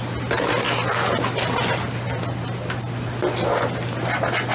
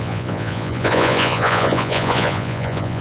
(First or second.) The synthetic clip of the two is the second